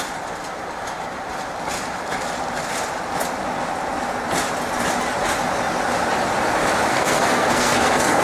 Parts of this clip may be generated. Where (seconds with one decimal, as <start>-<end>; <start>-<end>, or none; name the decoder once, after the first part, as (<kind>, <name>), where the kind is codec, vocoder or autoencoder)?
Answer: 6.9-8.2 (codec, SNAC)